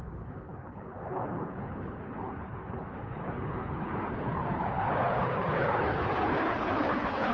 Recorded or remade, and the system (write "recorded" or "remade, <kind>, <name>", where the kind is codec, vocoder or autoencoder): remade, codec, HILCodec